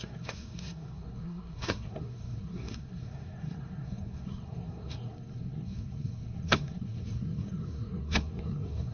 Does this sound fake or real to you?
fake